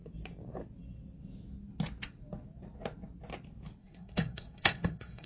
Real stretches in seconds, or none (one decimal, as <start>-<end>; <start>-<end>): 0.0-3.8

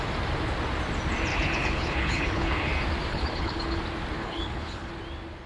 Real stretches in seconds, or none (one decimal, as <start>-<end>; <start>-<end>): 0.0-1.3; 2.7-3.1; 3.8-4.2; 4.9-5.5